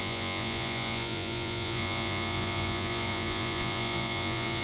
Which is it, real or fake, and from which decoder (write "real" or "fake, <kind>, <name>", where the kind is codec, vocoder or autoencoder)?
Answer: fake, vocoder, Vocos